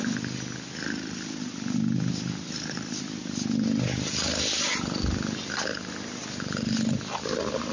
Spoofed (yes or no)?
no